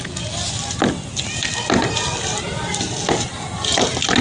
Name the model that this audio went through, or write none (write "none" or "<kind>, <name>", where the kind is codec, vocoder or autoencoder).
none